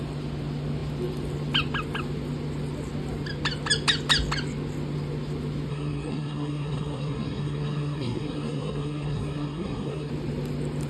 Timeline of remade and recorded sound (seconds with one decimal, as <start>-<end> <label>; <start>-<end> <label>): 0.0-5.7 recorded; 5.7-10.1 remade; 10.1-10.9 recorded